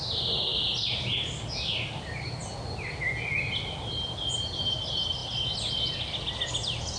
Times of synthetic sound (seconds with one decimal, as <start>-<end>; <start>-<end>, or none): none